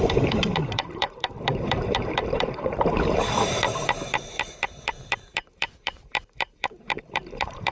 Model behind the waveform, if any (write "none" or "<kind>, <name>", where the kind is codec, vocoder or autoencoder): vocoder, BigVGAN v2